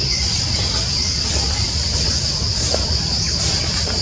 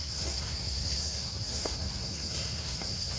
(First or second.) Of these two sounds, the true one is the first